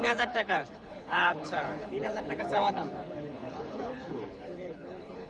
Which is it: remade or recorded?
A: remade